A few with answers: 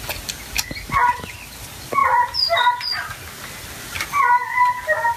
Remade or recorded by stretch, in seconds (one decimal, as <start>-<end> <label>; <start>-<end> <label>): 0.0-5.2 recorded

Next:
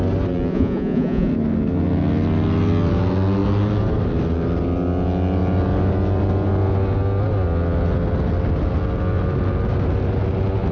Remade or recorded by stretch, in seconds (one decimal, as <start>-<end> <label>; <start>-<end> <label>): 0.0-0.5 recorded; 0.5-1.3 remade; 1.3-10.7 recorded

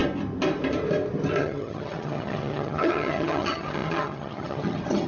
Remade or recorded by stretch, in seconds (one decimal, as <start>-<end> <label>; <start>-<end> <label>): 0.0-1.4 recorded; 1.4-5.1 remade

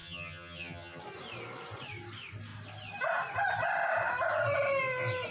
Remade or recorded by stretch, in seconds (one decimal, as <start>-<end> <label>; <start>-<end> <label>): 0.0-1.0 remade; 1.0-5.3 recorded

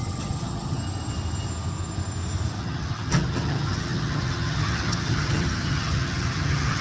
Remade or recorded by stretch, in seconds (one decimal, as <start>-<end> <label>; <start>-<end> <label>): 0.0-0.8 remade; 0.8-2.6 recorded; 2.6-6.8 remade

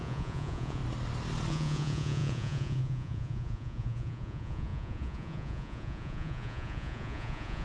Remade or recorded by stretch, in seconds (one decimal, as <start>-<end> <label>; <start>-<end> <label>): 0.0-0.8 remade; 0.8-1.5 recorded; 1.5-7.6 remade

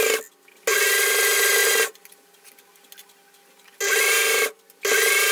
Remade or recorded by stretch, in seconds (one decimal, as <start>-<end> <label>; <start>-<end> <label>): 0.0-5.3 recorded